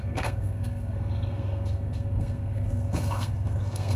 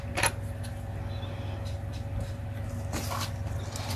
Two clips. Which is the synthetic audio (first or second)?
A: first